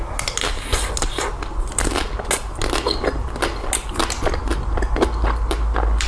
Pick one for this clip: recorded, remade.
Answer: recorded